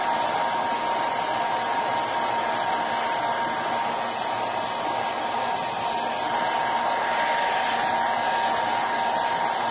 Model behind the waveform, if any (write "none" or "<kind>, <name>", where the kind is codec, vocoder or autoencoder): none